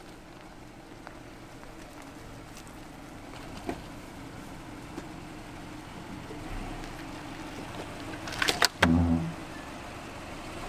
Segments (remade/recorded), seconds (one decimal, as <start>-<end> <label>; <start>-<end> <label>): 0.0-9.4 recorded; 9.4-10.0 remade; 10.0-10.7 recorded